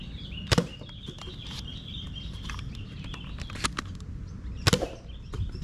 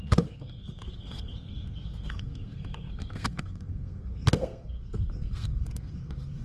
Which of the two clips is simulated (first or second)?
second